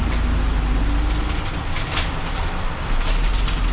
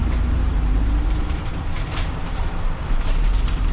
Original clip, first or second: first